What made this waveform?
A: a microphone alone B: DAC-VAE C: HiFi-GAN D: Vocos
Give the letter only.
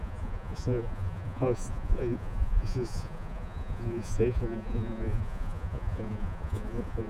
D